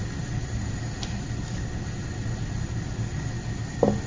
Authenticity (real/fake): real